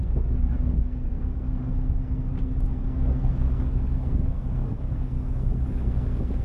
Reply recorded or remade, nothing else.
remade